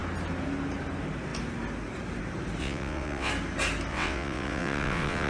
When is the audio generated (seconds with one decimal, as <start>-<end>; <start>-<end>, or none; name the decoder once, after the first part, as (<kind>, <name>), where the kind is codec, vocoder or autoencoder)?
2.6-3.3 (vocoder, WaveNeXt); 3.9-5.3